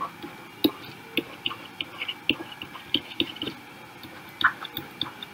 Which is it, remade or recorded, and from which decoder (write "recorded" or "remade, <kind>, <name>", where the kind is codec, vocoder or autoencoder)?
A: recorded